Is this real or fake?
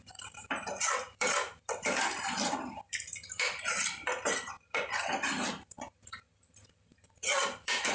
fake